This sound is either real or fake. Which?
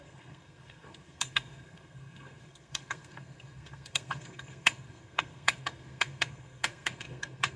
fake